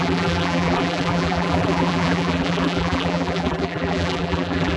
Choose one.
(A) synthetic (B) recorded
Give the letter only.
A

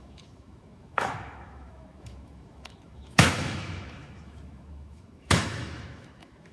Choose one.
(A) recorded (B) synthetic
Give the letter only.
B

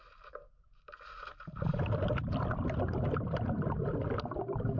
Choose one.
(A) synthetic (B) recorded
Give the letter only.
B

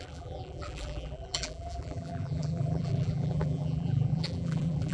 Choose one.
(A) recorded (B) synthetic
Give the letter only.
B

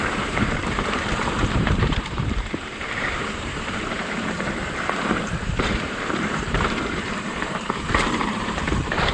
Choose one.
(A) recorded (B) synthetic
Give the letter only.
B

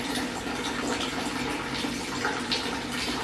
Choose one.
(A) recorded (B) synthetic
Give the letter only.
A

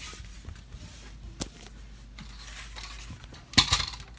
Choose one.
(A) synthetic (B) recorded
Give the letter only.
B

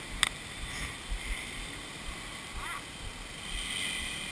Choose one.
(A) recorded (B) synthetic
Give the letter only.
A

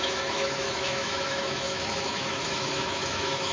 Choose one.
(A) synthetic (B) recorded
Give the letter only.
A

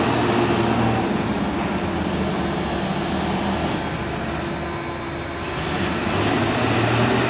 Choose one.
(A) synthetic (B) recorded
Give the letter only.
B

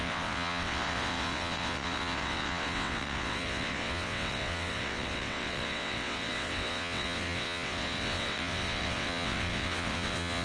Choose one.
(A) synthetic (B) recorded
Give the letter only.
A